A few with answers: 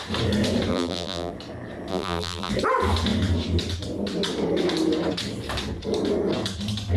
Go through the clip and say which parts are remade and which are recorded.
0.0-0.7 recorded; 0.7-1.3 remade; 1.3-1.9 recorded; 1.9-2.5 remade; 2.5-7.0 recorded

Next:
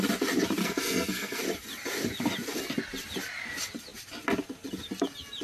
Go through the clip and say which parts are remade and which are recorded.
0.0-0.6 recorded; 0.6-1.4 remade; 1.4-5.4 recorded

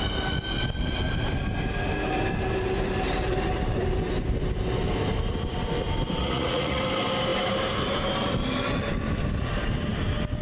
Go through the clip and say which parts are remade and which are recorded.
0.0-6.2 recorded; 6.2-6.8 remade; 6.8-10.4 recorded

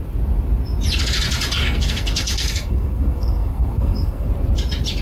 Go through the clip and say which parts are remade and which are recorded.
0.0-1.6 recorded; 1.6-4.3 remade; 4.3-5.0 recorded

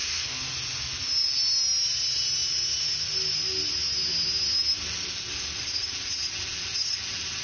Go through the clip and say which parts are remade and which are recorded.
0.0-0.5 remade; 0.5-7.4 recorded

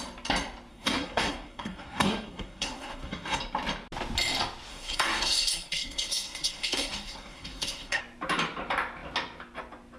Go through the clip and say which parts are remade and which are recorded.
0.0-0.7 recorded; 0.7-3.4 remade; 3.4-4.7 recorded; 4.7-8.0 remade; 8.0-10.0 recorded